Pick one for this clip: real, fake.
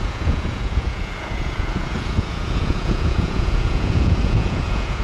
fake